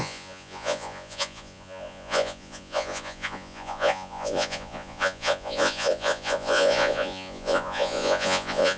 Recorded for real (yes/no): no